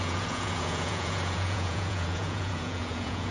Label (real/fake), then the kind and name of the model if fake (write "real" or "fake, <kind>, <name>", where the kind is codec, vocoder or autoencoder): fake, vocoder, Vocos